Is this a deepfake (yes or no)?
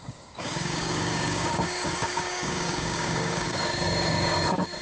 yes